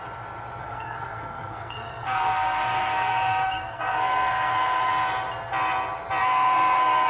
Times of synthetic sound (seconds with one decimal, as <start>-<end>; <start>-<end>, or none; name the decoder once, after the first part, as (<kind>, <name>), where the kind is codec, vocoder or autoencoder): 0.6-4.9 (codec, SNAC); 6.2-7.1